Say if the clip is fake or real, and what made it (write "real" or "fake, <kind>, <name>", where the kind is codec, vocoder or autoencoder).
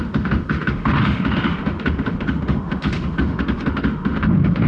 fake, autoencoder, DAC-VAE